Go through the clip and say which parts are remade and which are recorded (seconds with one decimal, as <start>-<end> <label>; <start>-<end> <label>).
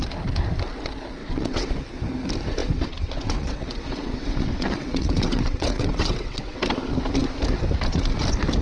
0.0-1.2 recorded; 1.2-1.7 remade; 1.7-2.6 recorded; 2.6-6.6 remade; 6.6-8.6 recorded